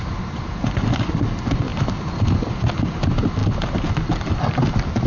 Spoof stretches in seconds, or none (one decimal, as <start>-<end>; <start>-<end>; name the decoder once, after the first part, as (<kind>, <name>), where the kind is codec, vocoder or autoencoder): none